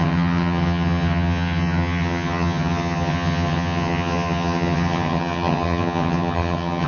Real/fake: fake